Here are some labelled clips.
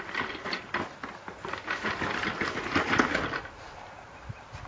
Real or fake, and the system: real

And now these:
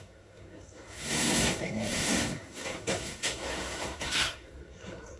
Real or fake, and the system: fake, codec, SNAC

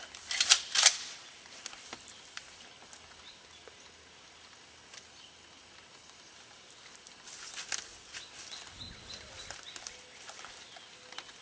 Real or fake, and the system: real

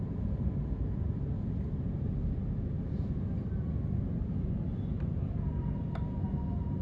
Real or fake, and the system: real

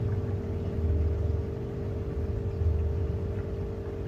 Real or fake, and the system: real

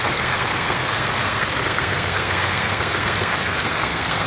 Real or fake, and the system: fake, codec, SNAC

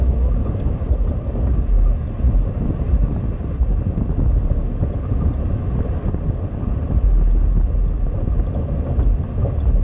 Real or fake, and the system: real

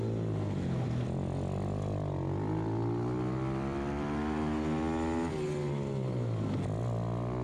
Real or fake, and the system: real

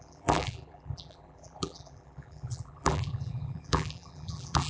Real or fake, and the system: fake, vocoder, BigVGAN v2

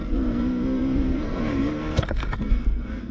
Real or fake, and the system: fake, codec, SNAC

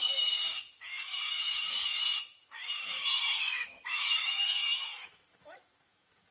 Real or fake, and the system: fake, autoencoder, DAC-VAE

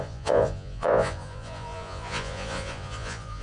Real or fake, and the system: fake, vocoder, Vocos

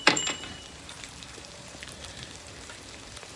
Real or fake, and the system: fake, vocoder, BigVGAN v2